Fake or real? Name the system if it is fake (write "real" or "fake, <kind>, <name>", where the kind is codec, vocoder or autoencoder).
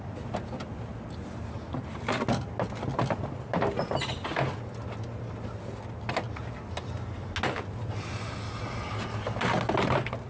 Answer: real